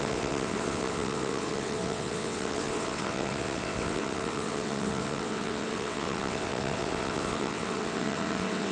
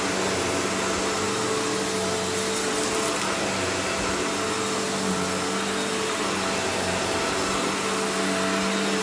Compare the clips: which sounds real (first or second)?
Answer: second